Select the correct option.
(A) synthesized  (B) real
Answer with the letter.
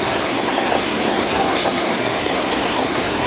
A